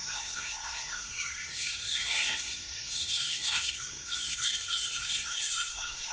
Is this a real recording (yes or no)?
no